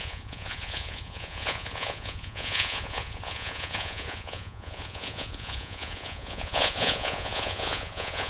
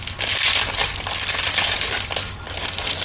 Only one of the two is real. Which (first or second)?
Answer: second